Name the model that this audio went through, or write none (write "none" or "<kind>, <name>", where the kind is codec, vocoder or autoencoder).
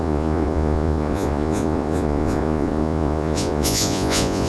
vocoder, Vocos